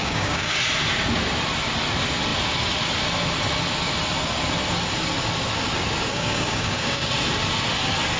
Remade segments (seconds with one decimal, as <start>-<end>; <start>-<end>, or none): 0.0-0.6; 6.1-7.1

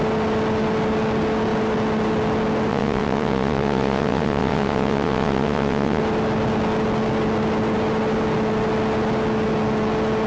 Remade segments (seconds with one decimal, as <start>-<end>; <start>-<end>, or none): 2.7-6.0

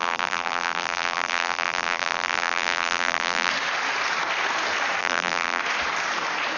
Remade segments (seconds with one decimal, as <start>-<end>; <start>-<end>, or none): 0.0-3.5; 5.0-5.6

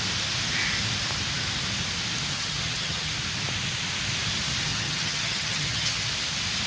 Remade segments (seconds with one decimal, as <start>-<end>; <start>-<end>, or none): 2.3-3.1; 4.7-6.0

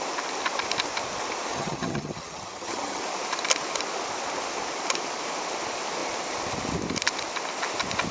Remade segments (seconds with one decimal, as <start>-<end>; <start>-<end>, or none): 1.5-3.0